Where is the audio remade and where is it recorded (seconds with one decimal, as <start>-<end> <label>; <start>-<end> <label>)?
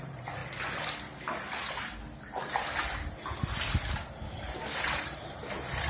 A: 0.0-0.4 remade; 0.4-3.9 recorded; 3.9-5.9 remade